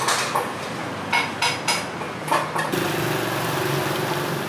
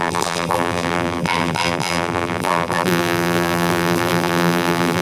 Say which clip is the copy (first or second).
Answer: second